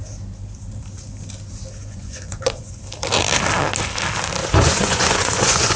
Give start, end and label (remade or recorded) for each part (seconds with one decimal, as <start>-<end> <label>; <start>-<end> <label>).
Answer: 0.0-1.8 recorded; 1.8-2.8 remade; 2.8-4.4 recorded; 4.4-5.8 remade